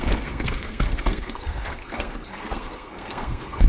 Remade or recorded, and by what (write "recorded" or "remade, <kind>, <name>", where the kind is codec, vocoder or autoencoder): remade, codec, SNAC